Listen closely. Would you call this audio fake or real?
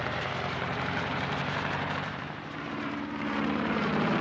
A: fake